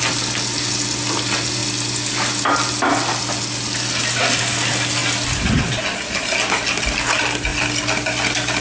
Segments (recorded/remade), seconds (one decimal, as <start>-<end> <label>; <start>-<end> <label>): 0.0-8.6 recorded